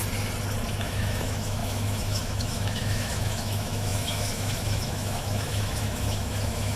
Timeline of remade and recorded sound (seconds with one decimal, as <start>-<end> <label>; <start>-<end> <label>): 0.0-0.7 recorded; 0.7-6.8 remade